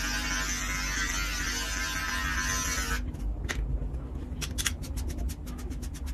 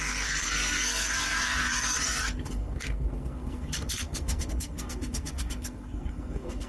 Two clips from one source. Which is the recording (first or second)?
first